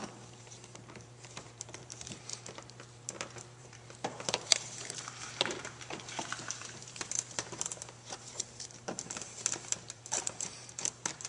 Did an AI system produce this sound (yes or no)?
yes